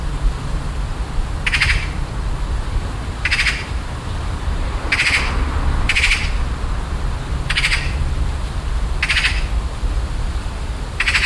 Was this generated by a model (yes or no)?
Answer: yes